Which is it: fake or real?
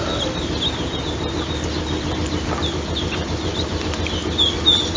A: real